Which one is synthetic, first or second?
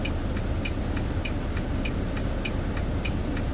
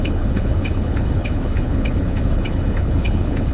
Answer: second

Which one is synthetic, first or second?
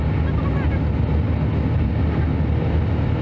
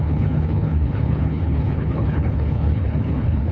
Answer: second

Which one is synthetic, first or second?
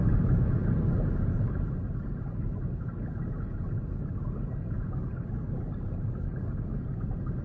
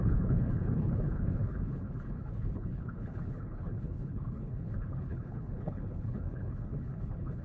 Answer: second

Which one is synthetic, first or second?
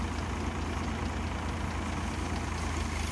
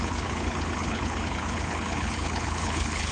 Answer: second